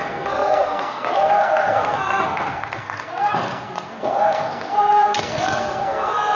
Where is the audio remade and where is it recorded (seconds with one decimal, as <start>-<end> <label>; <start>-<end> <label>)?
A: 0.0-6.3 remade